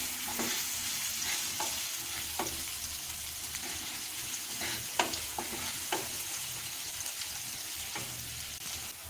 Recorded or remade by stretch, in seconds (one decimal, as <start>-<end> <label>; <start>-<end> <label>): 0.0-0.5 remade; 0.5-3.6 recorded; 3.6-6.8 remade; 6.8-9.1 recorded